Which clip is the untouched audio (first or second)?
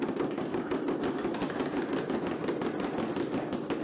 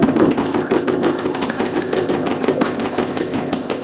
first